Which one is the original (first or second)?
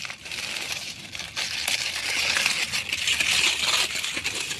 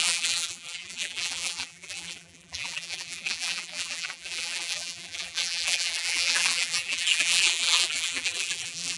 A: first